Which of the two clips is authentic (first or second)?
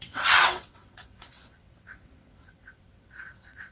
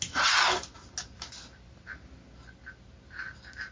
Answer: second